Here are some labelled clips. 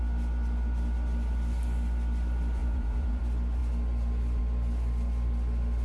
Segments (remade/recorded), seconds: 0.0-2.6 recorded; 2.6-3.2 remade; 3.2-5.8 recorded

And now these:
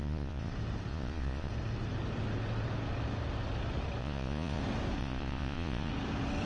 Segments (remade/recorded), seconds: 0.0-0.5 remade; 0.5-0.9 recorded; 0.9-1.5 remade; 1.5-4.0 recorded; 4.0-4.6 remade; 4.6-5.0 recorded; 5.0-5.9 remade; 5.9-6.5 recorded

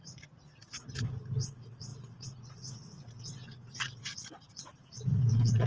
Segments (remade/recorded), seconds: 0.0-0.6 remade; 0.6-1.5 recorded; 1.5-5.7 remade

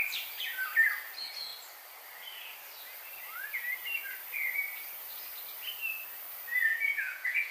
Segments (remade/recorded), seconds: 0.0-6.7 recorded; 6.7-7.5 remade